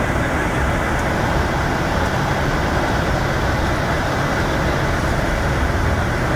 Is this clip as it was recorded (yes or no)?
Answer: yes